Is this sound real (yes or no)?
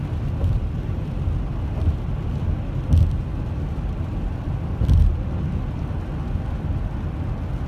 yes